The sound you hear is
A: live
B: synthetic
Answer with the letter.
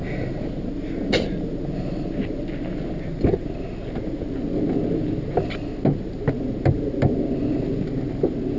A